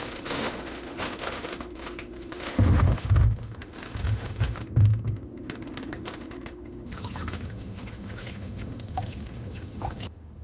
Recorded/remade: remade